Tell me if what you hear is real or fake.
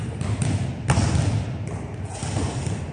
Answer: real